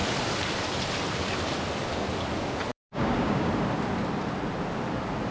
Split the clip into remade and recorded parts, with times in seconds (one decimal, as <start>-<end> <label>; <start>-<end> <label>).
0.0-2.7 recorded; 2.7-3.5 remade; 3.5-5.3 recorded